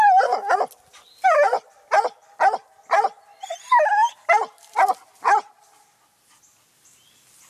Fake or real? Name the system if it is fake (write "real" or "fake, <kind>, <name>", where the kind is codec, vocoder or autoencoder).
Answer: real